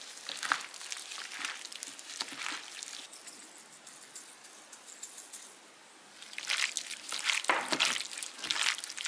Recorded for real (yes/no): yes